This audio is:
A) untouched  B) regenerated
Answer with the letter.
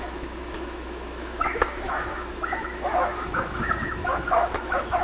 B